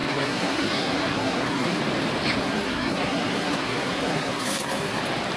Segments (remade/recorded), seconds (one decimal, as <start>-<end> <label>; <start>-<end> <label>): 0.0-1.8 remade; 1.8-2.4 recorded; 2.4-5.0 remade; 5.0-5.4 recorded